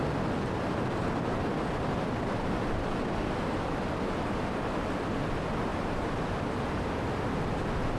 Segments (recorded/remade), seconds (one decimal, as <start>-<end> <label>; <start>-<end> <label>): 0.0-8.0 recorded